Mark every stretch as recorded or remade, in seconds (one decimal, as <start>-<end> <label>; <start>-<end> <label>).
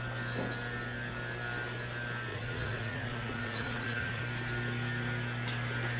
0.0-2.3 recorded; 2.3-4.2 remade; 4.2-6.0 recorded